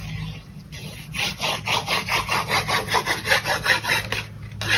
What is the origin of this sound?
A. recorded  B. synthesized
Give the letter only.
A